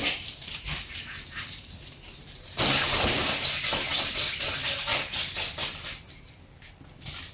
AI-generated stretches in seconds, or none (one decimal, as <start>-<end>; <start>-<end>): 0.0-3.3